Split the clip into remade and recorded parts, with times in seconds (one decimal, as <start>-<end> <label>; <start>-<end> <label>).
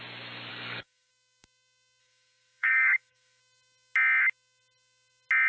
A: 0.0-0.5 recorded; 0.5-1.1 remade; 1.1-2.0 recorded; 2.0-3.4 remade; 3.4-5.5 recorded